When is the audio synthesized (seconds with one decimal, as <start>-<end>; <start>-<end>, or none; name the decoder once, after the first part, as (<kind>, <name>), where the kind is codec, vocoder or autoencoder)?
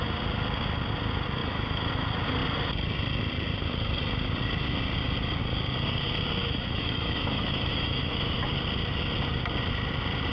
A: 1.4-1.9 (autoencoder, DAC-VAE); 6.4-8.4